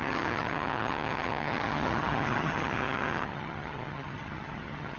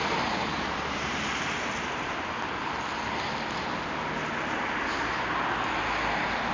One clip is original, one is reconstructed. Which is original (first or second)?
second